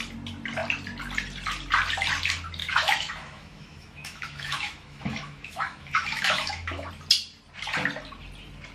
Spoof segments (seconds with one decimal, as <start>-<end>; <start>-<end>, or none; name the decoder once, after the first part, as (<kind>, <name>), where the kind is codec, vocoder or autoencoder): 2.6-6.9 (autoencoder, DAC-VAE)